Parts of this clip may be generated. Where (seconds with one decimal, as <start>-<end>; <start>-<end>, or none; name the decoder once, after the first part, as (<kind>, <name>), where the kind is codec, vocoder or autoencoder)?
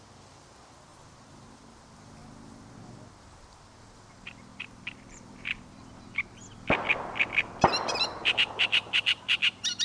0.9-1.6 (vocoder, BigVGAN v2); 4.5-6.3; 8.2-9.2